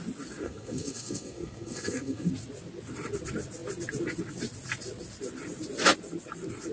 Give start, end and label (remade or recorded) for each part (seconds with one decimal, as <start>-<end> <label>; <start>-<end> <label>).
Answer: 0.0-0.4 recorded; 0.4-2.3 remade; 2.3-6.7 recorded